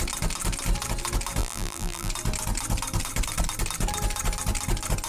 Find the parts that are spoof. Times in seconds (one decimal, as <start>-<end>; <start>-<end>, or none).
1.4-2.1